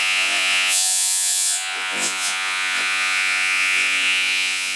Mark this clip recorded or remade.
remade